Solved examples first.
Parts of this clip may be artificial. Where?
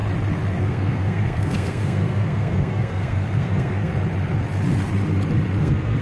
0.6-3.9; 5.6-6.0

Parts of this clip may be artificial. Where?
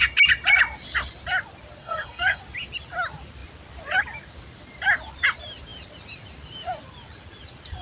1.8-2.4